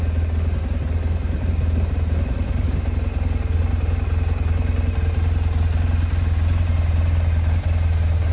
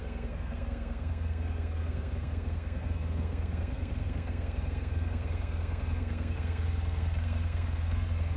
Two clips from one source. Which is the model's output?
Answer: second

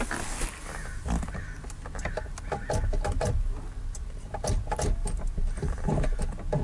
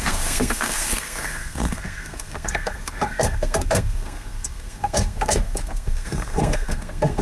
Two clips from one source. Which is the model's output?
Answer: second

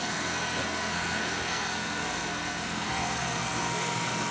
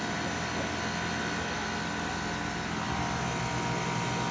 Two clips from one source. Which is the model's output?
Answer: first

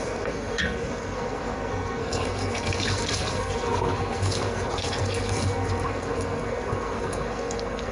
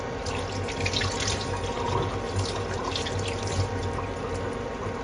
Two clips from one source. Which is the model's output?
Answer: first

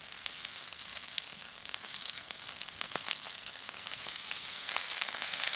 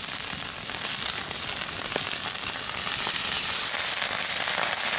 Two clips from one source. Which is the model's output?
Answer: first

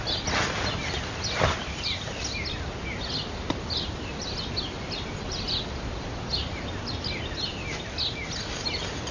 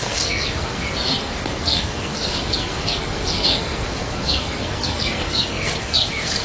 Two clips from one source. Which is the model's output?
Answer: second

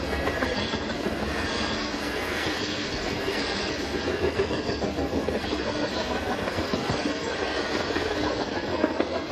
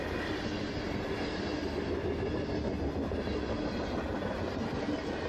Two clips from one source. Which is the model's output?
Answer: first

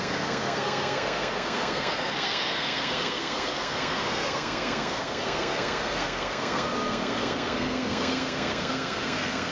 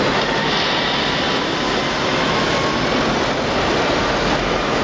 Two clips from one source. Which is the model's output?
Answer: first